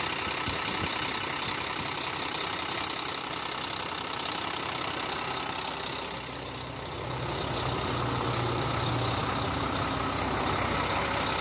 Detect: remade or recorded recorded